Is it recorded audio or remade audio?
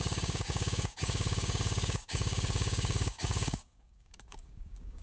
remade